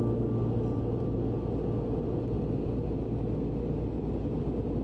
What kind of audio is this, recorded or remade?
recorded